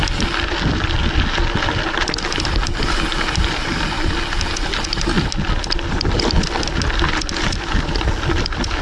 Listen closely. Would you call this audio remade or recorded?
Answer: recorded